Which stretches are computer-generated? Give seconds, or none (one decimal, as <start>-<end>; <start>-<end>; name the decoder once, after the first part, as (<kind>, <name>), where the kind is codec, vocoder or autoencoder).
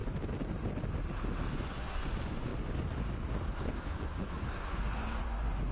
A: 1.5-2.5 (vocoder, Vocos); 3.8-5.7